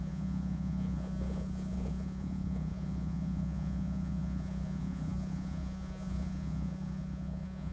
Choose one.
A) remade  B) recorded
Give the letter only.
A